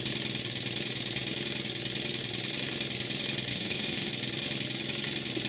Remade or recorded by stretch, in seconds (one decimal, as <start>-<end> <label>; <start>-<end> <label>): 0.0-3.5 recorded; 3.5-4.1 remade; 4.1-5.5 recorded